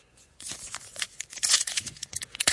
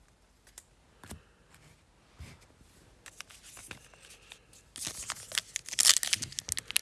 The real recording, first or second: second